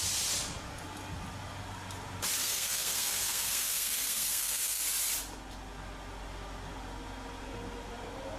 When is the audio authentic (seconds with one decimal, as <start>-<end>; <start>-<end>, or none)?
0.0-2.4; 4.8-8.4

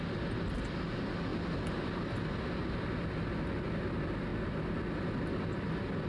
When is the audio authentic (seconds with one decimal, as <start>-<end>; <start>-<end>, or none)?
0.0-6.1

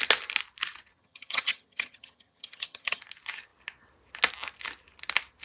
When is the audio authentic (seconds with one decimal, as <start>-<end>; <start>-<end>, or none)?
0.0-1.0; 3.0-5.4